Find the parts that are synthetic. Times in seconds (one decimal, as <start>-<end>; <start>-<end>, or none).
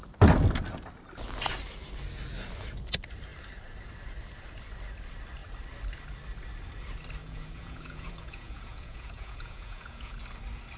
7.2-10.2